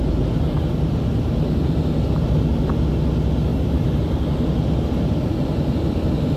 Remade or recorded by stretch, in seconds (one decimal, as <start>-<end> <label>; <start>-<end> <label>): 0.0-3.5 recorded; 3.5-4.3 remade; 4.3-6.4 recorded